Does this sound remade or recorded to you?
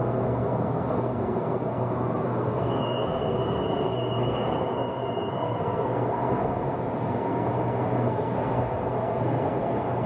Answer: remade